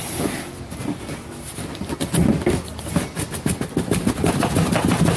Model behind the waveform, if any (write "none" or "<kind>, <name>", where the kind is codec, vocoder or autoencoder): none